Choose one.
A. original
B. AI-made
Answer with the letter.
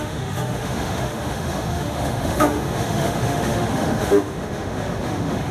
B